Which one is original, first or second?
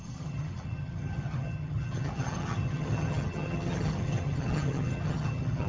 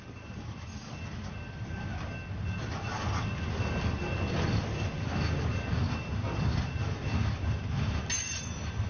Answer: second